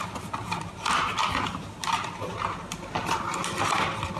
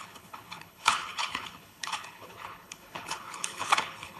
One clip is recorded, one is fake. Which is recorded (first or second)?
first